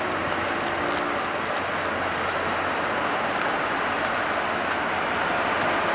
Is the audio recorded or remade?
recorded